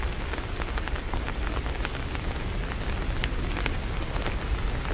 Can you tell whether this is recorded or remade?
recorded